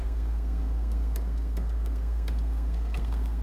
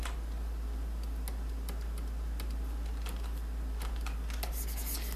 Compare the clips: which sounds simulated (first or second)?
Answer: first